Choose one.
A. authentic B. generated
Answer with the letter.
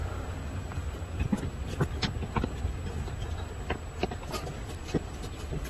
A